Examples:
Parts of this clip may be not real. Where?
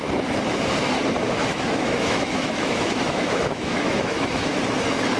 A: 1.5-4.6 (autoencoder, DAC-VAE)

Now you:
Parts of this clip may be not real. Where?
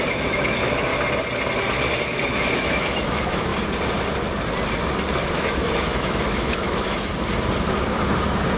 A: 0.0-0.9 (autoencoder, DAC-VAE); 2.0-3.5; 5.3-7.1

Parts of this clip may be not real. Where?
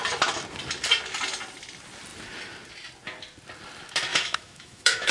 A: 4.1-5.1 (autoencoder, DAC-VAE)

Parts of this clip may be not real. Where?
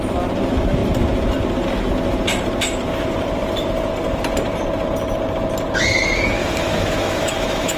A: 6.4-7.8 (autoencoder, DAC-VAE)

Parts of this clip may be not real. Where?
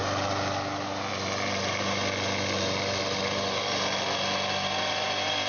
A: none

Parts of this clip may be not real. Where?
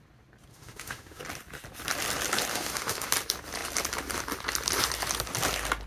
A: 0.5-1.2 (autoencoder, DAC-VAE); 2.5-3.1